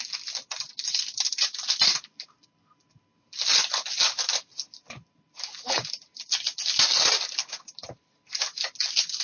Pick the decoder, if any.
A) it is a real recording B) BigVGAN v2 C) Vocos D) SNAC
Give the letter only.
A